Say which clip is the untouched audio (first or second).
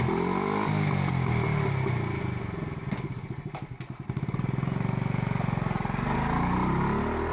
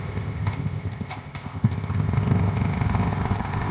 first